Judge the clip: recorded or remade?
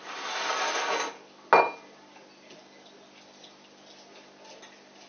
recorded